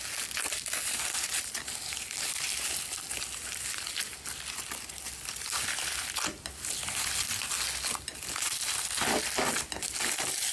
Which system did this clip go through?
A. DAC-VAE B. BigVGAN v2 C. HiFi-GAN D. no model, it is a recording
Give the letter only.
D